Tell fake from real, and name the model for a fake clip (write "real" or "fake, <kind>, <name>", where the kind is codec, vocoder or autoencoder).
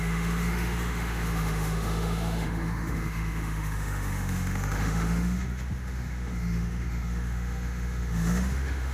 fake, autoencoder, DAC-VAE